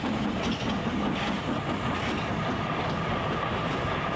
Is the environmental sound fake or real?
real